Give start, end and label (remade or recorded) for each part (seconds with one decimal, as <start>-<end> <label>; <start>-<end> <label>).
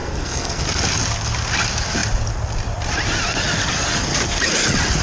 0.0-0.6 remade; 0.6-5.0 recorded